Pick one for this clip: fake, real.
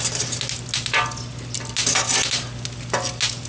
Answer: real